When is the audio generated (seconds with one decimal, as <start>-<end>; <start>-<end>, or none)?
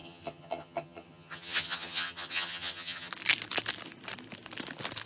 0.0-3.1